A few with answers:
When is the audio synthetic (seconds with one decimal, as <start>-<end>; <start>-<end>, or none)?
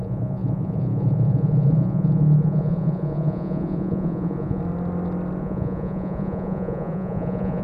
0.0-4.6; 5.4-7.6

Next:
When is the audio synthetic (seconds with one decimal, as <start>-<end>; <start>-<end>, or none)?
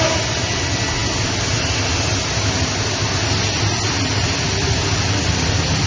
none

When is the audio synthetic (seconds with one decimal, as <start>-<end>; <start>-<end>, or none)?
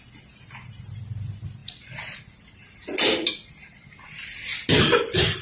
none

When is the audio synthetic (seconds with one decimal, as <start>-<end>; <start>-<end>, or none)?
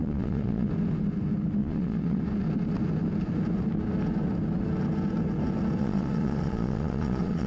0.0-0.7; 1.6-2.2; 5.8-7.5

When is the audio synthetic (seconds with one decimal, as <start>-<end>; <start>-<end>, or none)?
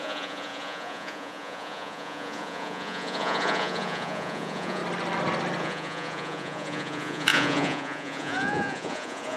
0.0-4.8; 5.6-9.4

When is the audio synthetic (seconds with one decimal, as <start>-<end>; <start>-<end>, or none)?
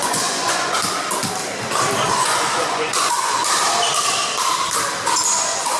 0.0-0.8; 2.1-3.4; 5.3-5.8